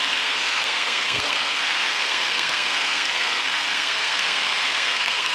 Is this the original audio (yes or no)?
no